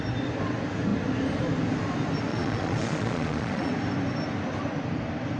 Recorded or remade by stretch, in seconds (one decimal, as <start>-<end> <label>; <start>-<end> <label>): 0.0-2.3 recorded; 2.3-3.7 remade; 3.7-5.4 recorded